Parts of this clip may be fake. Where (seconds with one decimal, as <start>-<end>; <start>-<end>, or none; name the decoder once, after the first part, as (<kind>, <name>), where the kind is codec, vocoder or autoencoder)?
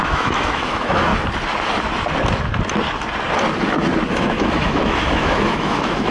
0.0-1.1 (autoencoder, DAC-VAE); 4.1-6.1